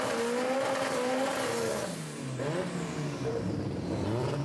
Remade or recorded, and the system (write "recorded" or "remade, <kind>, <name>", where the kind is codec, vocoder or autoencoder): recorded